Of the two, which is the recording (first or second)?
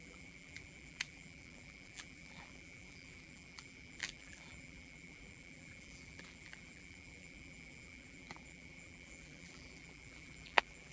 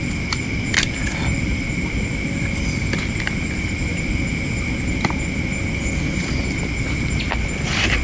second